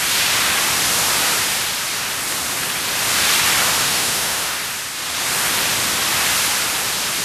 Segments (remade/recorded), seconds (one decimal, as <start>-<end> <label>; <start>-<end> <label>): 0.0-3.8 recorded; 3.8-4.6 remade; 4.6-7.2 recorded